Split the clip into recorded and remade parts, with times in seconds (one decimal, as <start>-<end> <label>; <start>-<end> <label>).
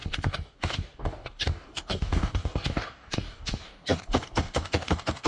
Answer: 0.0-5.3 remade